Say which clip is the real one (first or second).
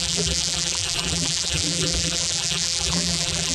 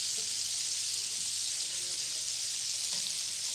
second